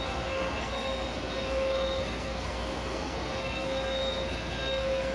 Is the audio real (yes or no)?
no